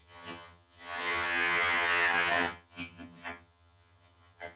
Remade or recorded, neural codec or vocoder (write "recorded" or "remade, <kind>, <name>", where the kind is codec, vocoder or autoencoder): remade, vocoder, HiFi-GAN